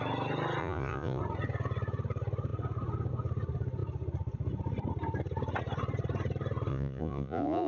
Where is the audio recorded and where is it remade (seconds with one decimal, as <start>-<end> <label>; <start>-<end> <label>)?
0.0-0.6 recorded; 0.6-1.2 remade; 1.2-6.7 recorded; 6.7-7.7 remade